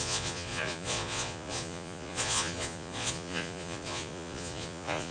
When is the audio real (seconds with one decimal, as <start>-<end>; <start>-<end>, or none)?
none